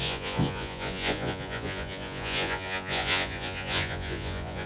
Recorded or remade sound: remade